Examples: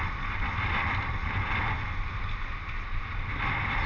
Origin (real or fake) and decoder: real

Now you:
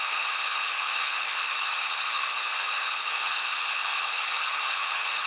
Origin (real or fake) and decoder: fake, codec, HILCodec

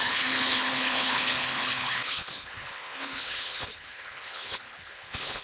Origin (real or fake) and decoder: fake, codec, HILCodec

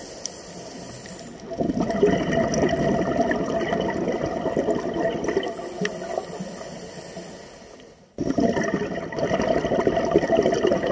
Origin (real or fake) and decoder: real